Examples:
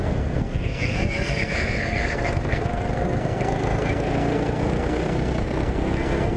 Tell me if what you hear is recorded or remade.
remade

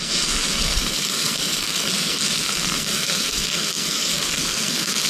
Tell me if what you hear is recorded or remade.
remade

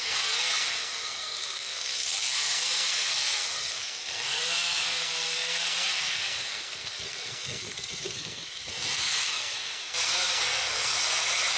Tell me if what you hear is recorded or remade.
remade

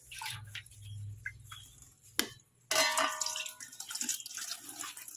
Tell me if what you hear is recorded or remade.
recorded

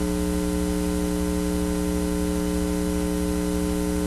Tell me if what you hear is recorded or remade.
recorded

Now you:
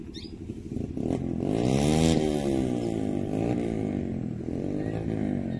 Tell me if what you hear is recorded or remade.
recorded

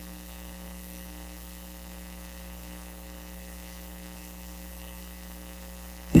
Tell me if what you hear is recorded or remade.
remade